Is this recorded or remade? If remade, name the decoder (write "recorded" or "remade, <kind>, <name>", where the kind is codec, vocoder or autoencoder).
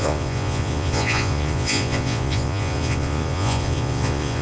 remade, vocoder, Vocos